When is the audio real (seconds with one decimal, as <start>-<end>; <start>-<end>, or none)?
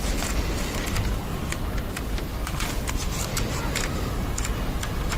0.0-1.3; 4.3-5.2